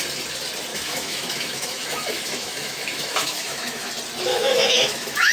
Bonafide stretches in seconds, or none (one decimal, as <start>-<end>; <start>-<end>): 0.0-0.7; 3.9-4.3